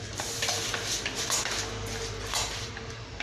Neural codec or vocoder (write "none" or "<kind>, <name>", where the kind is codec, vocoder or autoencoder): none